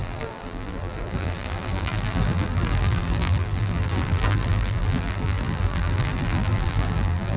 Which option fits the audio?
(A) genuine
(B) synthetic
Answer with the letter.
B